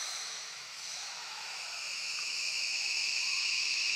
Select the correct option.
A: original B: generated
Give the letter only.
B